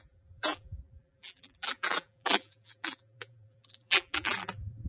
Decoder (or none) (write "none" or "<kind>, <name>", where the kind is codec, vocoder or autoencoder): vocoder, BigVGAN v2